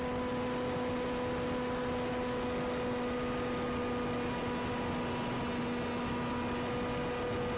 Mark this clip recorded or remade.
recorded